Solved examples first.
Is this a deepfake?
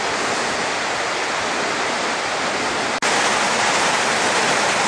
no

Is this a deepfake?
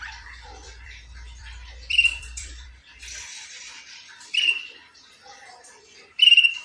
yes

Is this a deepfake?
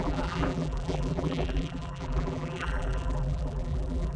yes